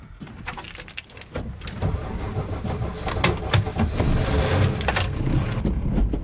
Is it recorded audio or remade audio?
recorded